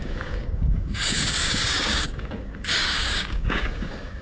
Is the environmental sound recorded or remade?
remade